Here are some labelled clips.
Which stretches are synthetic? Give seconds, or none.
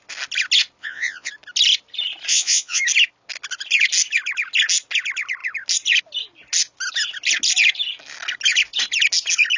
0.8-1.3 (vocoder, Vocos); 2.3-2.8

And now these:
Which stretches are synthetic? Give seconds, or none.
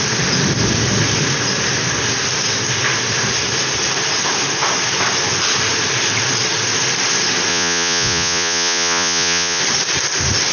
7.5-9.6 (vocoder, Vocos)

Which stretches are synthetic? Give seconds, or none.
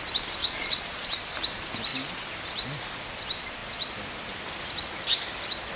0.4-1.2 (vocoder, Vocos)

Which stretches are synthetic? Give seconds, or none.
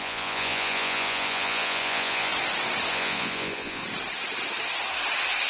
0.0-2.3 (vocoder, Vocos); 2.9-3.8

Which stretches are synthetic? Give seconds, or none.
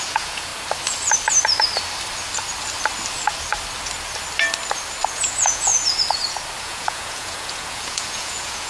0.0-0.5 (vocoder, Vocos); 5.1-5.7; 6.6-8.7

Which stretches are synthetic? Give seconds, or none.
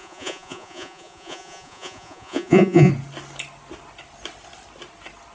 0.0-2.9 (vocoder, Vocos)